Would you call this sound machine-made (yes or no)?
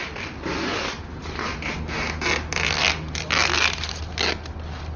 no